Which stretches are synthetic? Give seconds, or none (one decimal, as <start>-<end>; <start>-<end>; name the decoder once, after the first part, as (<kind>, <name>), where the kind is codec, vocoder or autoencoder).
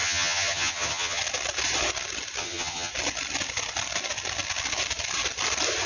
0.0-1.2 (vocoder, HiFi-GAN); 2.4-2.9